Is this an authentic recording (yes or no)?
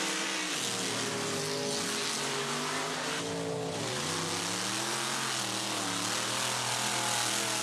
yes